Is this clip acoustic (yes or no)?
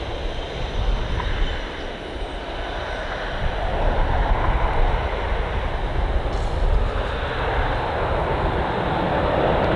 yes